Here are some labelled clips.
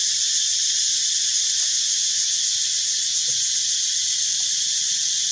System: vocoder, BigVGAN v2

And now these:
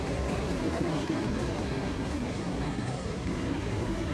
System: codec, SNAC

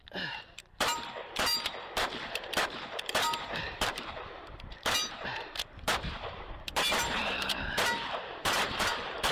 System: vocoder, BigVGAN v2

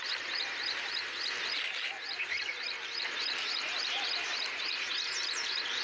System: vocoder, BigVGAN v2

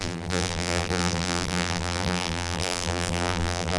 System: vocoder, BigVGAN v2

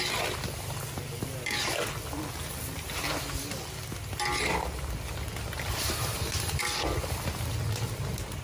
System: none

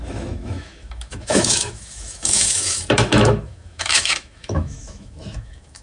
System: autoencoder, DAC-VAE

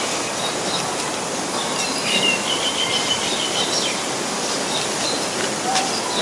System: none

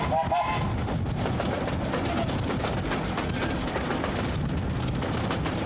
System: none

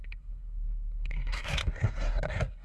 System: codec, SNAC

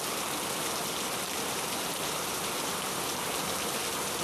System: vocoder, BigVGAN v2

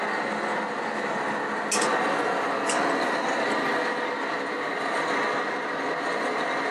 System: none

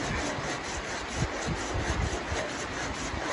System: none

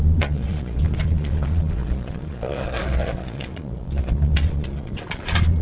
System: vocoder, Vocos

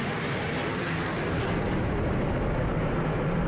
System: none